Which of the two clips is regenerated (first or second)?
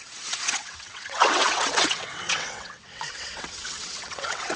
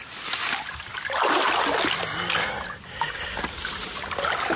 first